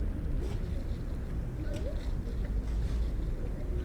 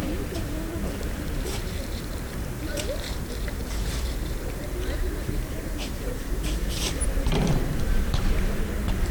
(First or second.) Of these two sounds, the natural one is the first